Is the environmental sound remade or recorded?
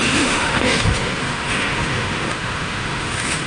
remade